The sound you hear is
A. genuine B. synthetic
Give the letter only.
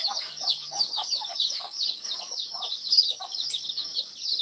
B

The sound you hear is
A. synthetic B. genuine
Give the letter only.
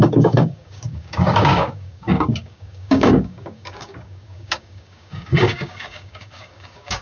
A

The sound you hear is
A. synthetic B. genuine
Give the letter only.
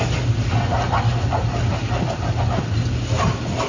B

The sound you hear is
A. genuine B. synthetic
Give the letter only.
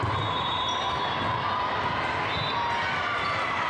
A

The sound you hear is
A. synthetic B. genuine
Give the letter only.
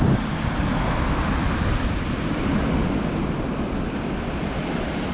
B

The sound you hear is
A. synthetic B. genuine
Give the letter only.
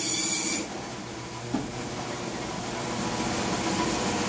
B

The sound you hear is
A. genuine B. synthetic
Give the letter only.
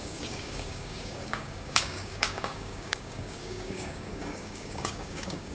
B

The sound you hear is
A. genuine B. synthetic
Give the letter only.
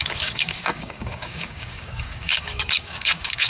B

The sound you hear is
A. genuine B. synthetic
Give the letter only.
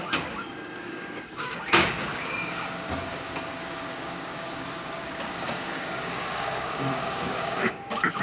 B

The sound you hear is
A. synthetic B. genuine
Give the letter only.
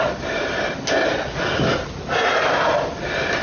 B